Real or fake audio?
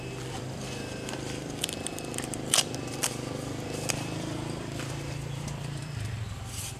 fake